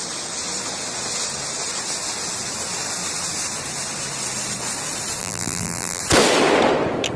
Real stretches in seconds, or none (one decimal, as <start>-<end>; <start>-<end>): 0.0-5.2; 6.0-7.2